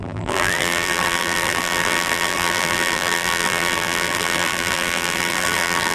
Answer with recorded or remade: remade